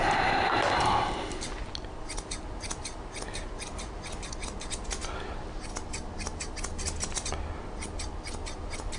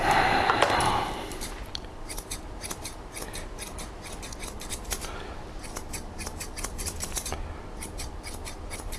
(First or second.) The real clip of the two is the first